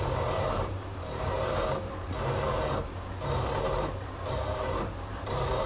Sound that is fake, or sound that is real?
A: fake